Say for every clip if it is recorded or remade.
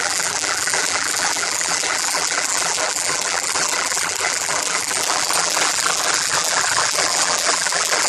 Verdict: remade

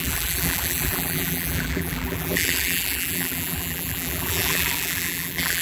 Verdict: remade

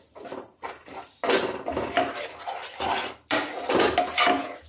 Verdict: remade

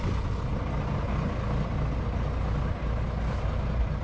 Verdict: recorded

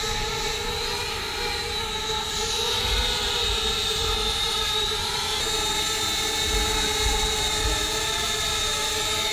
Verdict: remade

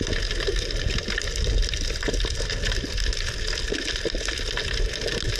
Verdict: recorded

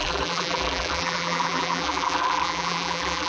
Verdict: remade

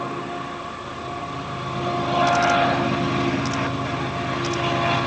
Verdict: recorded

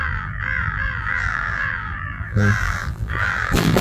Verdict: remade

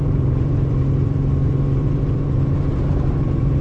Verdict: remade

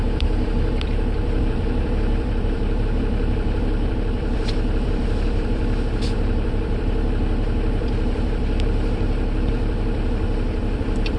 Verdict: remade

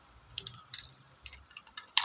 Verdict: remade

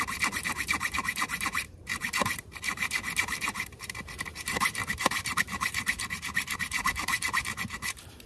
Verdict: remade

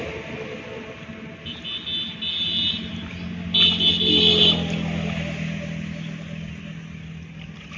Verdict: recorded